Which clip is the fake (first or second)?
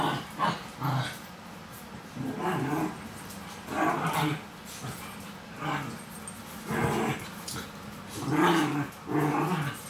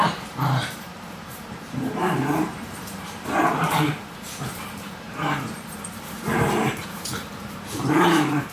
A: second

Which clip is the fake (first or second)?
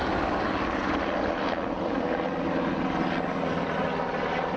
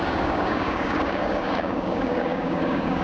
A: second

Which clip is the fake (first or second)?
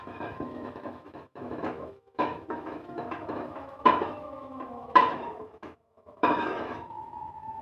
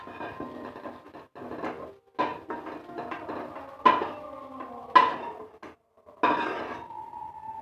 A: first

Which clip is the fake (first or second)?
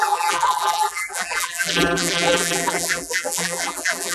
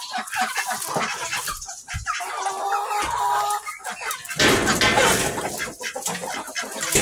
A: first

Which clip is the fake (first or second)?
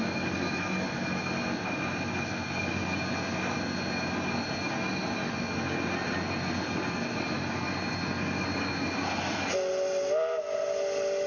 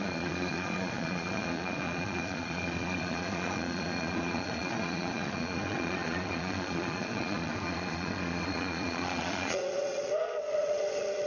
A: second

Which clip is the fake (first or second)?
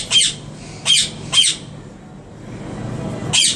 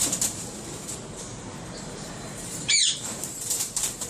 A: second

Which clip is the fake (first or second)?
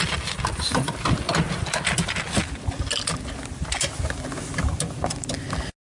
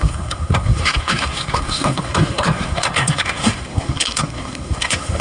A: second